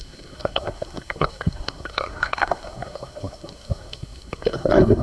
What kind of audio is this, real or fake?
fake